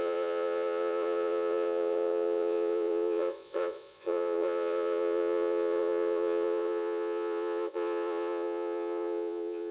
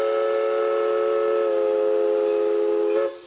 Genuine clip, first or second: second